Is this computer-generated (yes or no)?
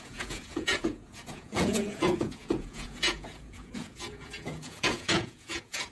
yes